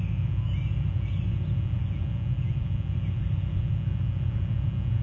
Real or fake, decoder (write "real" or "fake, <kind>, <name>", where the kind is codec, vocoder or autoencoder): real